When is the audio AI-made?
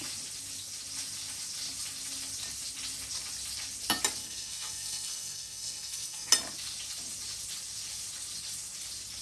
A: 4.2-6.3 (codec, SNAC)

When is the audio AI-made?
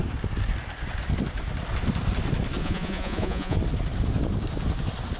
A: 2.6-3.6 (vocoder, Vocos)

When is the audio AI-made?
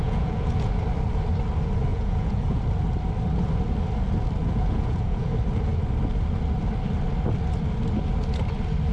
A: 0.0-0.7 (vocoder, Vocos); 1.9-2.6; 4.4-5.3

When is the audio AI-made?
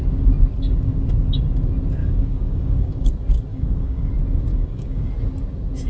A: 2.0-3.1 (codec, DAC); 3.5-4.1; 4.5-5.1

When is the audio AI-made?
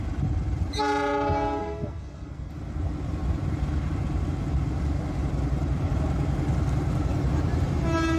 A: 1.6-2.5 (codec, SNAC)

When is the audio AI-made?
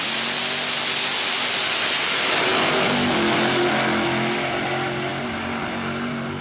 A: none